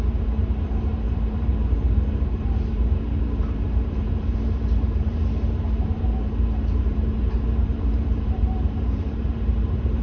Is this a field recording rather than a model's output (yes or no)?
no